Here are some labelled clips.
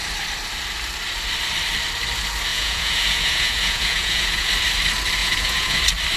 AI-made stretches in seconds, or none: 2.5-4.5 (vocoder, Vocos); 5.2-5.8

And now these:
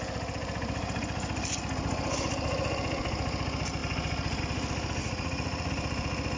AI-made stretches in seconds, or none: 5.0-5.7 (vocoder, Vocos)

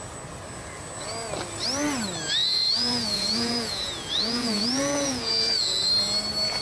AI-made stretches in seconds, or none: 2.4-5.9 (vocoder, Vocos)

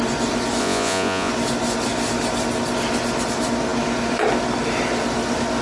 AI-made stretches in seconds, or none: 0.6-1.3 (vocoder, Vocos)

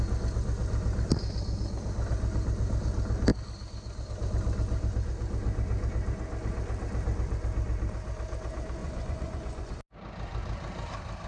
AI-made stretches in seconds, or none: 8.8-9.8 (vocoder, Vocos)